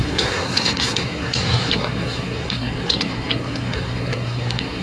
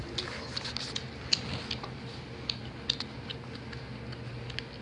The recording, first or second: second